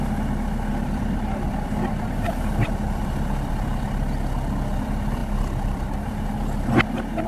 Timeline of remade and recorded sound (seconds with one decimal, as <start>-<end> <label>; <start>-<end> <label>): 0.0-0.7 recorded; 0.7-3.5 remade; 3.5-5.2 recorded; 5.2-6.0 remade; 6.0-7.3 recorded